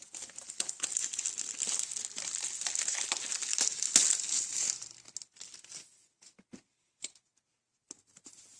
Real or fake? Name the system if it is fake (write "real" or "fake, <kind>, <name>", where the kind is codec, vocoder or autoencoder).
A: real